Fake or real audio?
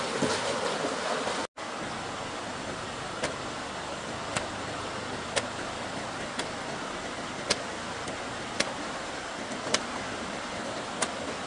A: real